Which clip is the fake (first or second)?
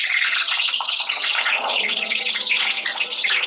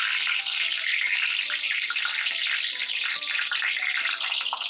first